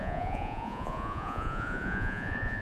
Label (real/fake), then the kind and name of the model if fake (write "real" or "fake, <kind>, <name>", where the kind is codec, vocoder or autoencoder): fake, vocoder, Vocos